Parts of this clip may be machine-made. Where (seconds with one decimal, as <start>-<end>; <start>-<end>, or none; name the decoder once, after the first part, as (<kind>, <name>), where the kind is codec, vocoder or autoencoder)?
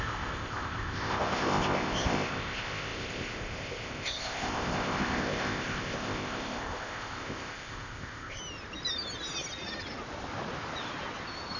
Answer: 0.0-8.4 (codec, ZipCodec)